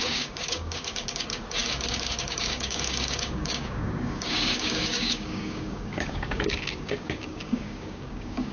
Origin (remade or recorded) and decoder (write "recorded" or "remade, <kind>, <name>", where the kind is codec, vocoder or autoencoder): remade, codec, DAC